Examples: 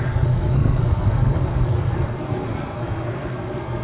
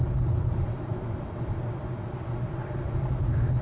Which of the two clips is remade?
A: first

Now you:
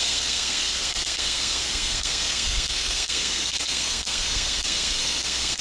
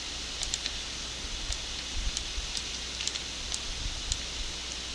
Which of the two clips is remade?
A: first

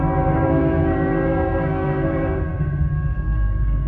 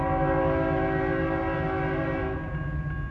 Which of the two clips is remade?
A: first